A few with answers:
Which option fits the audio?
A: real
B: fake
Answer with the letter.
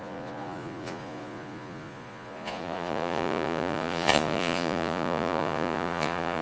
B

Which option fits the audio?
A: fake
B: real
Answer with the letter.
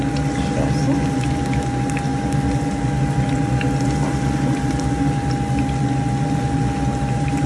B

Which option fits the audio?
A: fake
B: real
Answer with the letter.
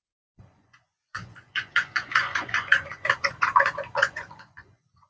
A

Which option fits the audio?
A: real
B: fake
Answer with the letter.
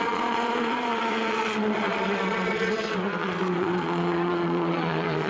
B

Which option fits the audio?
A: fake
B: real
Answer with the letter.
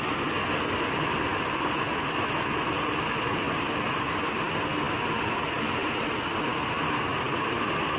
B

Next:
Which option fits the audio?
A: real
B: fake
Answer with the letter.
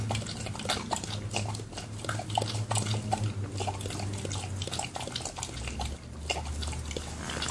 A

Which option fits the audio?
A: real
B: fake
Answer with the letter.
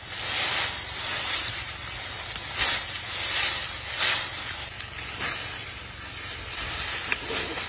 A